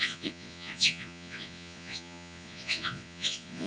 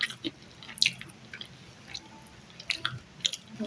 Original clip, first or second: second